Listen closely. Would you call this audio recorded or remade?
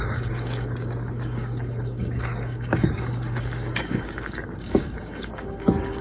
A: remade